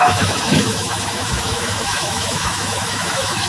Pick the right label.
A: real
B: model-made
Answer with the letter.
B